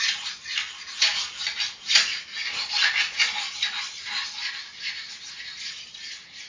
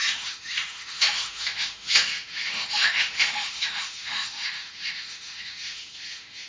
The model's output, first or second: second